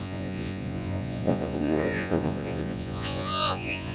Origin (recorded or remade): remade